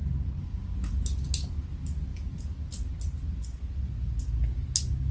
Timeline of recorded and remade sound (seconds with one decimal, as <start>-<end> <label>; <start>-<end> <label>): 0.0-5.1 recorded